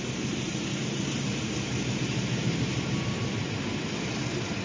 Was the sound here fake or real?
real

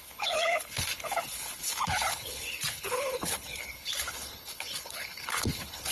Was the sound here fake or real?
fake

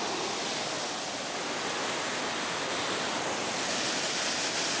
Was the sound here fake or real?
real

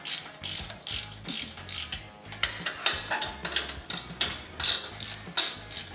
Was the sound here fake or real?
real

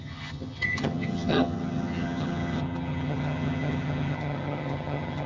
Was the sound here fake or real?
fake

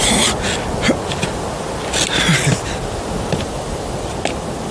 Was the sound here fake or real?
real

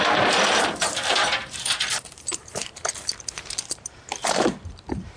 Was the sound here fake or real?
fake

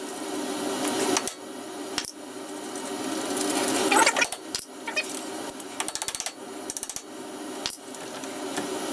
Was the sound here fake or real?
real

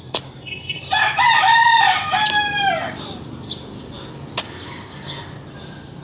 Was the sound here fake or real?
fake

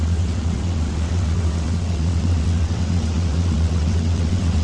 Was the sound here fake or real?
fake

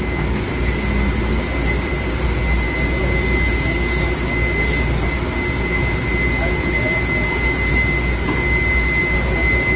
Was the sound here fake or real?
real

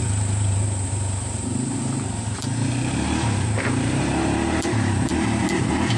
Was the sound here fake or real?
fake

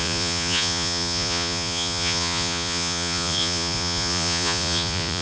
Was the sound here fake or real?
fake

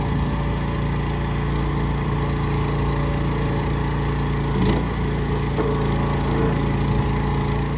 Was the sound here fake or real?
real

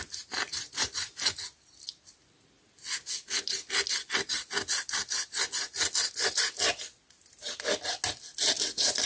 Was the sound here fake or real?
real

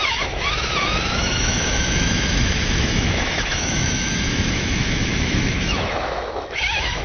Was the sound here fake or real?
fake